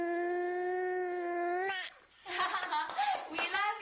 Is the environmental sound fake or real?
real